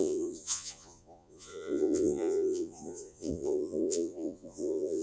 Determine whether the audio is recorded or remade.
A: remade